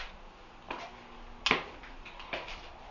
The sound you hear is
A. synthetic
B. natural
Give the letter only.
B